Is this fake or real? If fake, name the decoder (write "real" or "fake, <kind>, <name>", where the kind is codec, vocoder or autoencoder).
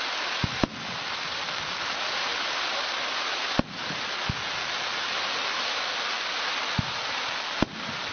real